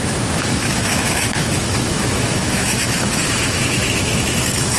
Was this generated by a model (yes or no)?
yes